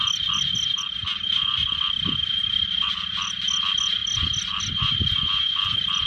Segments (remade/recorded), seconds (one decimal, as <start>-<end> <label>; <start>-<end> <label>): 0.0-6.1 recorded